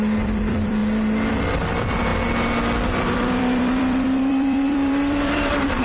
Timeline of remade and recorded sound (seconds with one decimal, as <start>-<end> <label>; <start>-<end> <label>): 0.0-0.8 remade; 0.8-1.3 recorded; 1.3-2.1 remade; 2.1-2.9 recorded; 2.9-5.8 remade